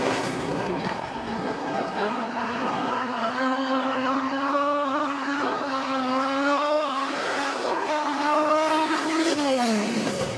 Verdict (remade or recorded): remade